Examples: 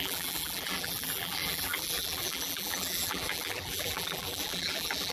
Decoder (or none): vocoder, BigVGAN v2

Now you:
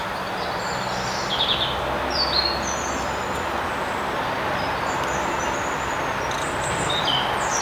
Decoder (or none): none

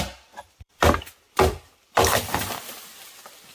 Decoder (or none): vocoder, BigVGAN v2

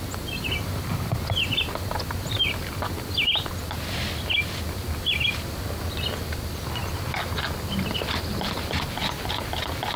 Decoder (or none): none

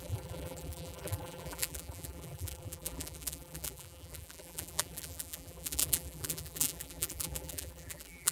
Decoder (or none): vocoder, BigVGAN v2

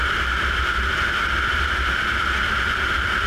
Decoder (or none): vocoder, BigVGAN v2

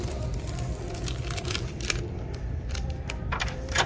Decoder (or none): vocoder, BigVGAN v2